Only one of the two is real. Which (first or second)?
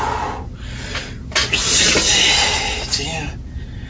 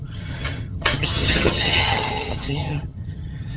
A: first